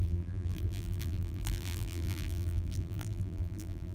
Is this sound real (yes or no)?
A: no